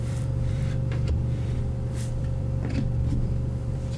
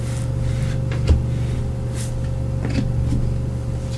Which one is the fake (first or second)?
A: first